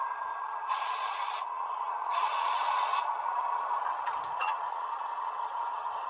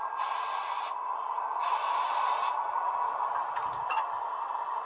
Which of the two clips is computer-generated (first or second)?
first